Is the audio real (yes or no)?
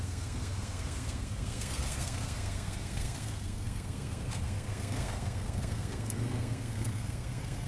no